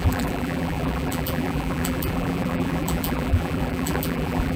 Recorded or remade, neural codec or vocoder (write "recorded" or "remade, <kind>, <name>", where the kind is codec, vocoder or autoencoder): remade, vocoder, BigVGAN v2